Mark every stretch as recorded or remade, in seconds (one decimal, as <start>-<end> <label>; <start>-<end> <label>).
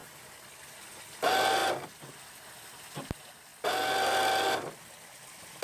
0.0-1.1 remade; 1.1-1.6 recorded; 1.6-2.1 remade; 2.1-5.6 recorded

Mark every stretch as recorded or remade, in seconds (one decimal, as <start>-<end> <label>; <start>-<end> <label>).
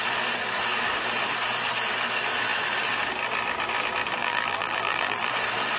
0.0-4.2 recorded; 4.2-5.3 remade; 5.3-5.8 recorded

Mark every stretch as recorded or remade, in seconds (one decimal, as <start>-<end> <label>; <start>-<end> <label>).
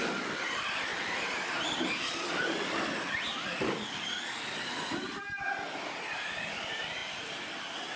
0.0-8.0 recorded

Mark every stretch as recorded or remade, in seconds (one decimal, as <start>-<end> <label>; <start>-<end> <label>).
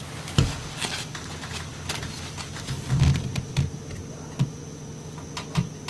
0.0-5.9 recorded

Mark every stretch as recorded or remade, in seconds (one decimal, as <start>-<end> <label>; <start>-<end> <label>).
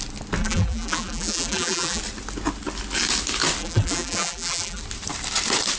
0.0-0.4 recorded; 0.4-2.0 remade; 2.0-3.6 recorded; 3.6-4.8 remade; 4.8-5.8 recorded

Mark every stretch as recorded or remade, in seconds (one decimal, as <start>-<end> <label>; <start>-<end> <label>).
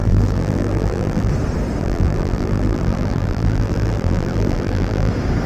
0.0-1.3 remade; 1.3-1.8 recorded; 1.8-5.1 remade; 5.1-5.5 recorded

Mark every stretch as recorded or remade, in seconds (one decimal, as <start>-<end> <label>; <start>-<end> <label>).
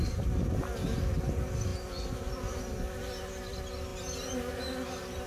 0.0-5.3 recorded